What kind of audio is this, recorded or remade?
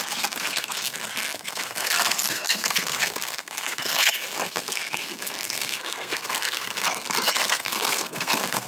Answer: remade